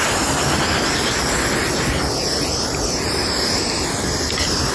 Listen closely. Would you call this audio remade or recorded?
recorded